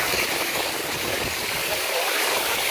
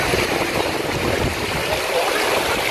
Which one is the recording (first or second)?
second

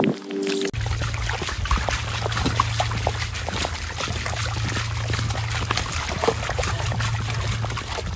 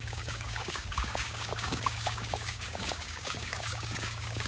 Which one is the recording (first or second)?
first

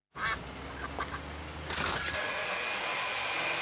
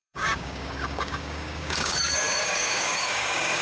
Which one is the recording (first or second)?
first